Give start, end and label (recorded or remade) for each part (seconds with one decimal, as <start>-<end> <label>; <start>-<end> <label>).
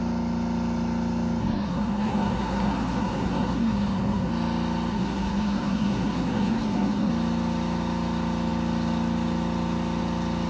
0.0-1.4 recorded; 1.4-4.3 remade; 4.3-4.9 recorded; 4.9-7.1 remade; 7.1-10.5 recorded